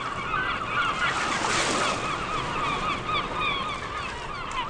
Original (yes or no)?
yes